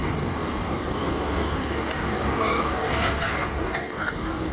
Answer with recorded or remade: remade